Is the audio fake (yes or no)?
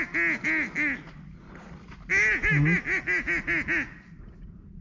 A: no